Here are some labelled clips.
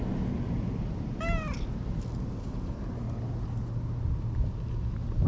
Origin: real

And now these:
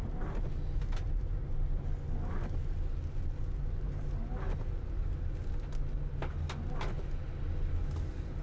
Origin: real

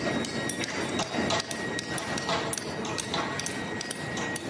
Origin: real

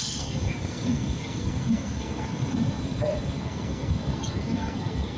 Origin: fake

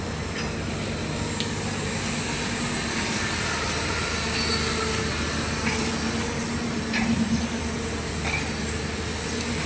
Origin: fake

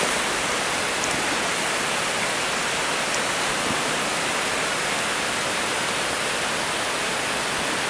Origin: real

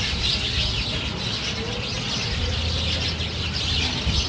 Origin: real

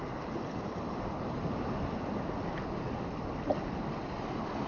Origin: real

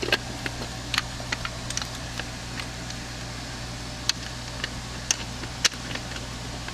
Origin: real